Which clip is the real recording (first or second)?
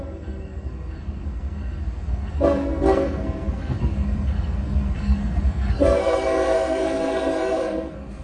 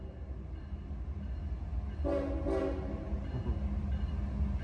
second